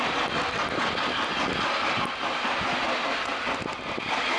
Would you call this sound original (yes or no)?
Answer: yes